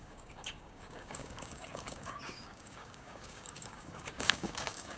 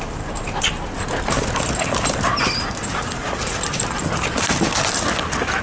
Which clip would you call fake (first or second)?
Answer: first